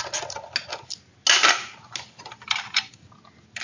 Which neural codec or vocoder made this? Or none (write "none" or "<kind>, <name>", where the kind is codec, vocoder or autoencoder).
none